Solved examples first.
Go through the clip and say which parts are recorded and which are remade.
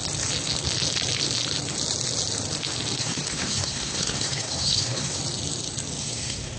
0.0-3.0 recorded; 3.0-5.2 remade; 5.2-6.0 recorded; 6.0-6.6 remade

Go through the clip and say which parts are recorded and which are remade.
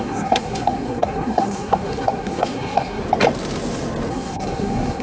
0.0-3.0 remade; 3.0-4.1 recorded; 4.1-5.0 remade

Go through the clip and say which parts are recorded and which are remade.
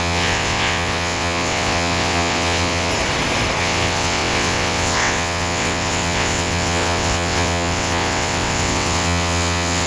0.0-2.9 remade; 2.9-3.6 recorded; 3.6-9.9 remade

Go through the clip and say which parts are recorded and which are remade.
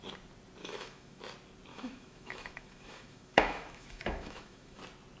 0.0-0.6 recorded; 0.6-1.2 remade; 1.2-1.7 recorded; 1.7-4.8 remade; 4.8-5.2 recorded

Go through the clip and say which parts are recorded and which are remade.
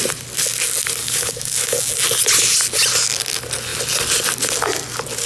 0.0-1.0 recorded; 1.0-1.9 remade; 1.9-5.3 recorded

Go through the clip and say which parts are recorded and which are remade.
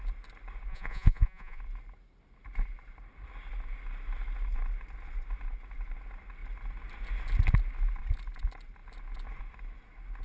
0.0-0.7 recorded; 0.7-1.6 remade; 1.6-10.2 recorded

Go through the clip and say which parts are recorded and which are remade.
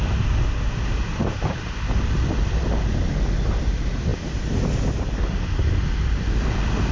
0.0-6.9 recorded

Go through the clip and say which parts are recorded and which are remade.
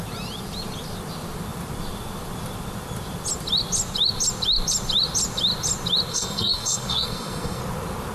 0.0-6.1 recorded; 6.1-7.6 remade; 7.6-8.1 recorded